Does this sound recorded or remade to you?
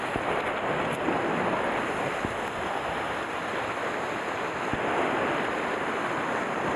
recorded